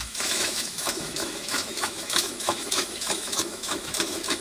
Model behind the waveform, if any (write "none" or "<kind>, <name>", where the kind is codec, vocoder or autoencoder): autoencoder, DAC-VAE